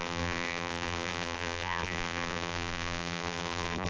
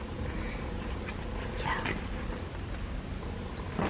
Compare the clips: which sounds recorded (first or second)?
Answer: second